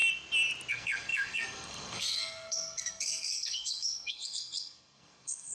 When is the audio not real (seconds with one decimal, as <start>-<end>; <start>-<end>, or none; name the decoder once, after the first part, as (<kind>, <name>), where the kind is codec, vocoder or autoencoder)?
0.7-5.5 (codec, SNAC)